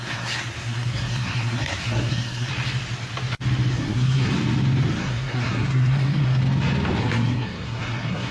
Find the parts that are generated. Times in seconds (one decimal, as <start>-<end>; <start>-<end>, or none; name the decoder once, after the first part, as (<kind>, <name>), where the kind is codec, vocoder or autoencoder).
0.0-2.5 (codec, SNAC); 3.7-4.3; 5.0-6.4; 7.0-8.3